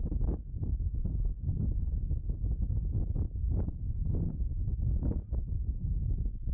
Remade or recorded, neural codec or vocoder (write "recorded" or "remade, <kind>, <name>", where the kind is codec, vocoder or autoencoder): recorded